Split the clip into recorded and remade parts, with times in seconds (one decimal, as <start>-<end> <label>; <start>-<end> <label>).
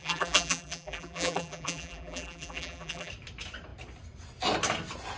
0.0-3.1 remade; 3.1-5.2 recorded